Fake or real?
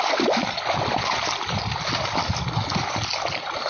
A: real